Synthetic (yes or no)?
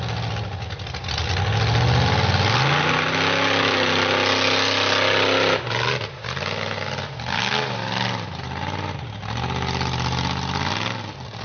no